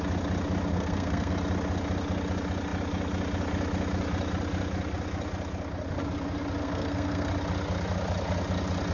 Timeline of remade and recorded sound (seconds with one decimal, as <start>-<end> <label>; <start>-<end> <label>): 0.0-0.7 recorded; 0.7-1.3 remade; 1.3-6.6 recorded; 6.6-7.3 remade; 7.3-8.9 recorded